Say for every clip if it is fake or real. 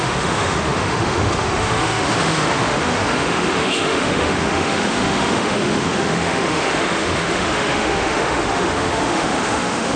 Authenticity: fake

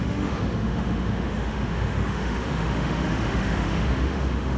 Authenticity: fake